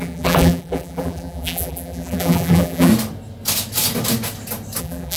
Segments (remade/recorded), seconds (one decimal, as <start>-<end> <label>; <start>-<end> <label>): 0.0-2.9 remade; 2.9-4.8 recorded; 4.8-5.2 remade